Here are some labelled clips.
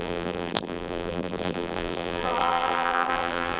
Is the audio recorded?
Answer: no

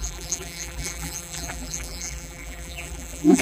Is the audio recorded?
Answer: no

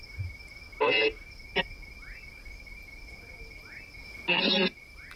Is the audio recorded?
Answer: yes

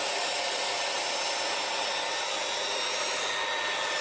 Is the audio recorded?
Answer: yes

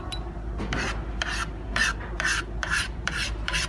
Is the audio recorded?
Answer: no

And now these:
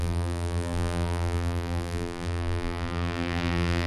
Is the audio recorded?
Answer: no